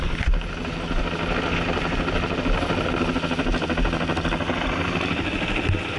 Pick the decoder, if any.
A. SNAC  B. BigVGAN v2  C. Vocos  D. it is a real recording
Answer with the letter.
D